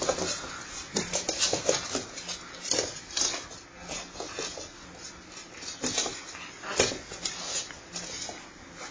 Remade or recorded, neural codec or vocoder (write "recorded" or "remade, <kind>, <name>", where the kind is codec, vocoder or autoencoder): recorded